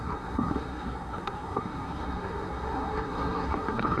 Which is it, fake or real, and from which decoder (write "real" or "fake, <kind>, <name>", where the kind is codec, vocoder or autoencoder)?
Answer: fake, codec, SNAC